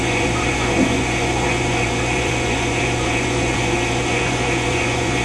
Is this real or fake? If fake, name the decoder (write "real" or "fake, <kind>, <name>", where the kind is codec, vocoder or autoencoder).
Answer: fake, vocoder, Vocos